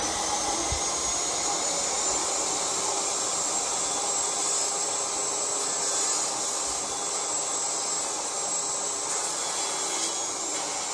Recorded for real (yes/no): yes